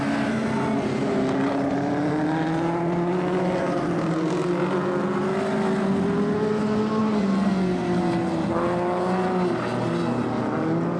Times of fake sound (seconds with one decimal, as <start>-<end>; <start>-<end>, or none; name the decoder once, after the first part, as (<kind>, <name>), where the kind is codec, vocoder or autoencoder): none